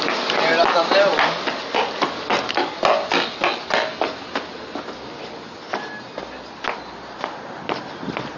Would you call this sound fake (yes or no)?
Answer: no